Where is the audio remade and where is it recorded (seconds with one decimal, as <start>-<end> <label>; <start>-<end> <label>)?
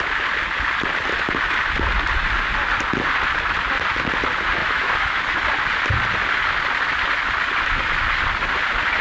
0.0-4.6 recorded; 4.6-5.2 remade; 5.2-9.0 recorded